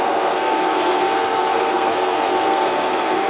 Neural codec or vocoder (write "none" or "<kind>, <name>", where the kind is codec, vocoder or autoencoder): codec, SNAC